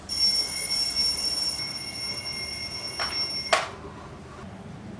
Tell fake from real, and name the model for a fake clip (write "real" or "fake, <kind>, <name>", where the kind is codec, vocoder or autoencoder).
real